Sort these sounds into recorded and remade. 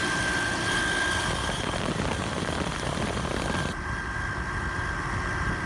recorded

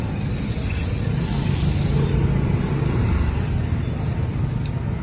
recorded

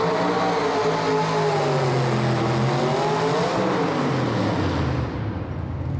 recorded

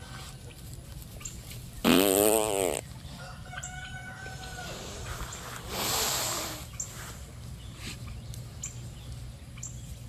recorded